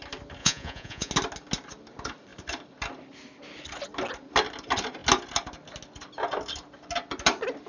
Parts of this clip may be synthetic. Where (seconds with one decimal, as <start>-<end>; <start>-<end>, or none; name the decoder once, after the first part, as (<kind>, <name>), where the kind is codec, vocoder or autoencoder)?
0.4-1.1 (vocoder, Vocos)